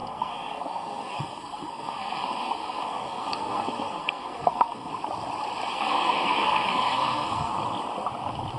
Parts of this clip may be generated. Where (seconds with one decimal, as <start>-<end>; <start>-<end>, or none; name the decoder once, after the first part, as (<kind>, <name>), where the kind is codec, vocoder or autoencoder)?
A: 0.0-4.9 (codec, SNAC); 5.7-7.5